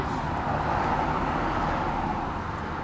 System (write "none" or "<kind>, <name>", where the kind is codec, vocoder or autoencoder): none